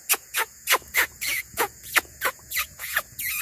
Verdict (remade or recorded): remade